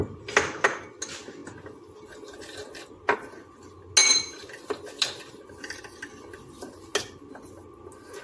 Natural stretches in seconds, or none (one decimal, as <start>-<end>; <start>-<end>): 0.0-8.2

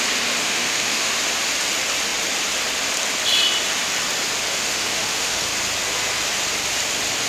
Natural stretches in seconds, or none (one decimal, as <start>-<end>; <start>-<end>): 0.0-0.4; 1.1-4.5; 5.4-7.3